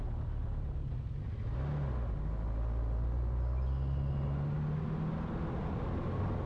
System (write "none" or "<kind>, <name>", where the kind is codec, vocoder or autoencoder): none